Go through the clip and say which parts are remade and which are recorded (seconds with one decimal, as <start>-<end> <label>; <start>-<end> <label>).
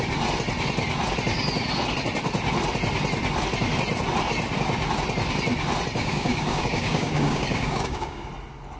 0.0-6.0 recorded; 6.0-8.3 remade; 8.3-8.8 recorded